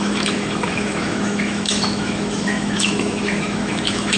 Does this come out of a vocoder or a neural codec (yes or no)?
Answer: yes